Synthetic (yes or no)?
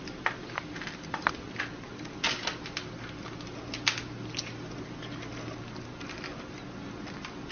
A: no